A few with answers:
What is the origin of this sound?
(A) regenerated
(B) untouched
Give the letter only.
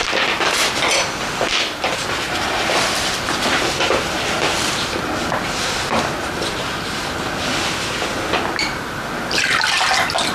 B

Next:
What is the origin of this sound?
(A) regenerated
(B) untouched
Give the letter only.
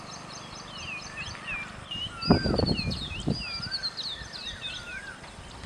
B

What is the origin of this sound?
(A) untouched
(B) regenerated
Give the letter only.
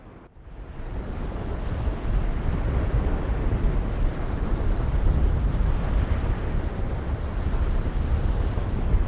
A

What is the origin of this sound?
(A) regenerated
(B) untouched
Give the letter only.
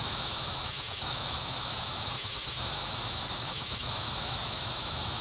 A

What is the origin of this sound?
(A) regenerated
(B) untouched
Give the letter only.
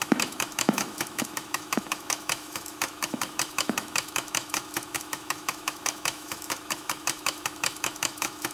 A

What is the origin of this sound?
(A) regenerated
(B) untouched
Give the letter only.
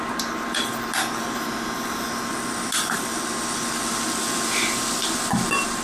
B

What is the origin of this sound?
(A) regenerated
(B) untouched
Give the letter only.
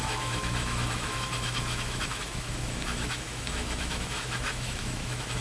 A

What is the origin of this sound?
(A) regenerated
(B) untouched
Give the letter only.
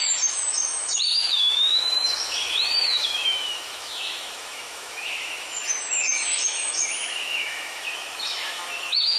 A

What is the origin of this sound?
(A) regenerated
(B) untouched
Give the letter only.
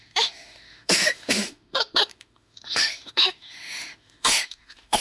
A